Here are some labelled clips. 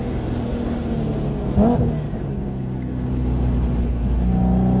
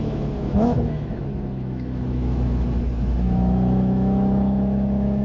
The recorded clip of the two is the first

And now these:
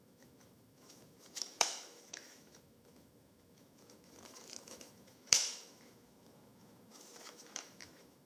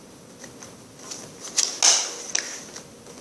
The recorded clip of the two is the second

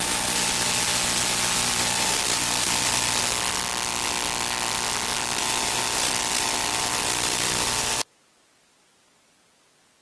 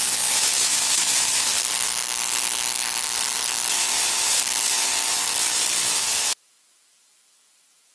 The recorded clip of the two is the first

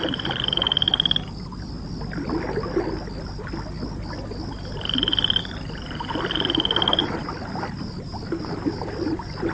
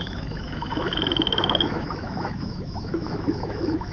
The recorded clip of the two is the first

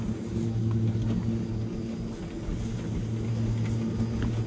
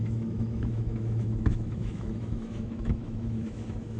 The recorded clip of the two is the first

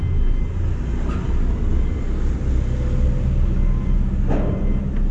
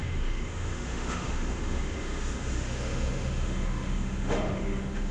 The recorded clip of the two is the first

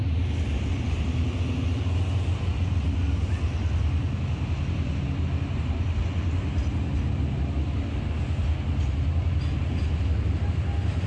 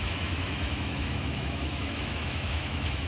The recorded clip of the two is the first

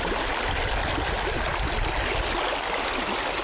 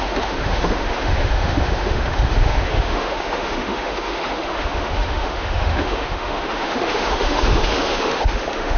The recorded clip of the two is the first